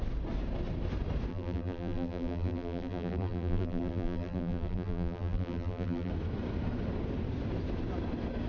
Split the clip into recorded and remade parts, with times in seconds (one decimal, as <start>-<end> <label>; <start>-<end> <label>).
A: 0.0-1.3 recorded; 1.3-6.1 remade; 6.1-8.5 recorded